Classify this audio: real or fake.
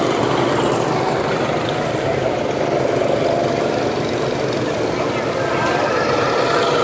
real